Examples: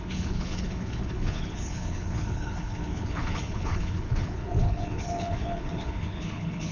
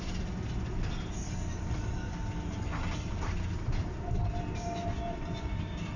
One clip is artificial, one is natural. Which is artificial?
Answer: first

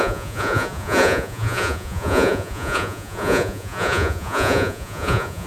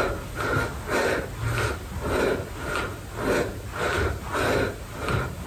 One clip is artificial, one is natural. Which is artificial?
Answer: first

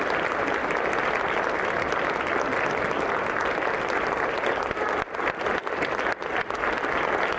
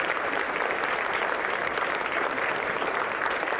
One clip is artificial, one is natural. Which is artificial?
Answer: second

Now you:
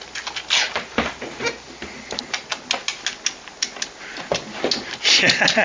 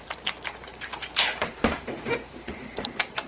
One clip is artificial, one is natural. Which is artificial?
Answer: second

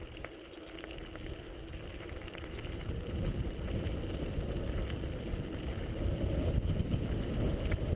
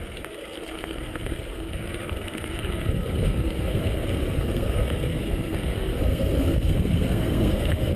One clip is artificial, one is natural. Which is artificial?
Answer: second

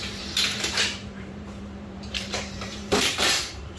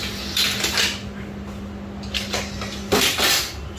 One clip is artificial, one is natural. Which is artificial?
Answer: first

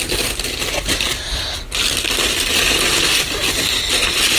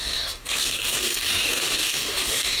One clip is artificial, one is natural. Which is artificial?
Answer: second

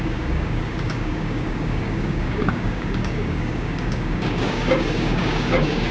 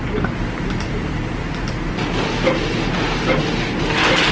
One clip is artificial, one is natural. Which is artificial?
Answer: first